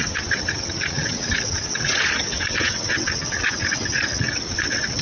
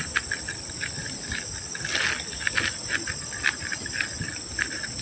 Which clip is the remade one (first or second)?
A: first